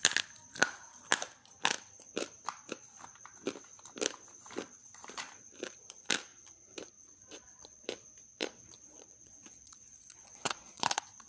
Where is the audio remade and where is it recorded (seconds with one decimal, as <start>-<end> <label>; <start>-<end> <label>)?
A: 0.0-6.3 recorded; 6.3-7.9 remade; 7.9-8.3 recorded; 8.3-11.3 remade